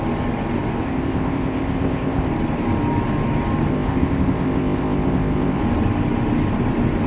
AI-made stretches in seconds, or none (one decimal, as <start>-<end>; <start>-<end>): 0.8-2.3; 3.7-5.6